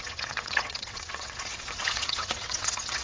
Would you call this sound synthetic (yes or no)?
yes